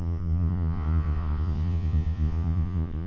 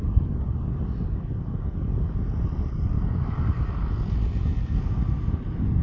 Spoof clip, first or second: first